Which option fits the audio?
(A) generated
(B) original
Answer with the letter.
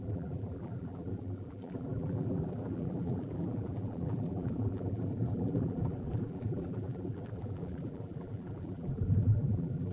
A